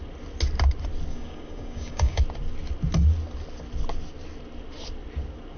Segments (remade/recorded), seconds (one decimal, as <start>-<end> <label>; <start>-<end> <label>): 0.0-1.1 recorded; 1.1-2.2 remade; 2.2-5.6 recorded